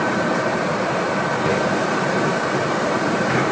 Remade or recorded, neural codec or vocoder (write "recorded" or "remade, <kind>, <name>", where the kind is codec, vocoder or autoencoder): remade, vocoder, BigVGAN v2